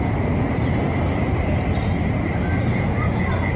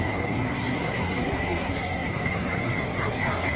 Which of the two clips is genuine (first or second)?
first